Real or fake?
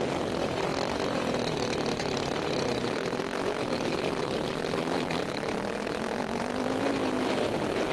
real